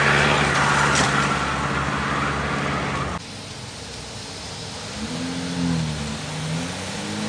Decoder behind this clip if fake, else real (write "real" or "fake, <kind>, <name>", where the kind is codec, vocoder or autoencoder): real